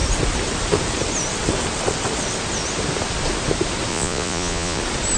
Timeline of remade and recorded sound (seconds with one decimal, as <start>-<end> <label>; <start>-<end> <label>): 0.0-3.9 recorded; 3.9-4.8 remade; 4.8-5.2 recorded